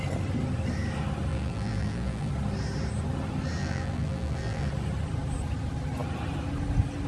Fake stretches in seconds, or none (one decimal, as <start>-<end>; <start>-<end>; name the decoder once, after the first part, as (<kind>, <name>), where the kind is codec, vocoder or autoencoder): 1.3-2.3 (vocoder, BigVGAN v2); 3.6-4.7